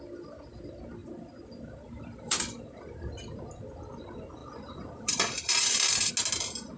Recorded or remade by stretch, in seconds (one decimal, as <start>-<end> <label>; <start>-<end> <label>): 0.0-1.0 recorded; 1.0-3.1 remade; 3.1-4.4 recorded; 4.4-6.1 remade; 6.1-6.8 recorded